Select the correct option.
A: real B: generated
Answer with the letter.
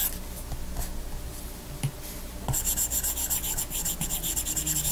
A